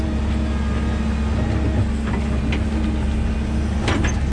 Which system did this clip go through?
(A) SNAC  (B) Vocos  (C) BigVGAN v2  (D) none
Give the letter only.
D